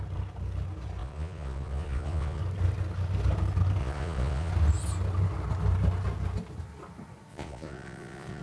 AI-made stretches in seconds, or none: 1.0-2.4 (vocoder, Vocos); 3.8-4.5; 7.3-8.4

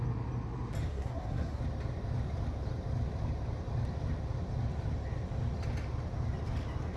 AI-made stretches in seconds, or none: 0.9-1.6 (codec, SNAC)